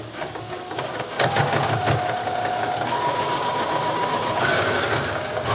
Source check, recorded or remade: remade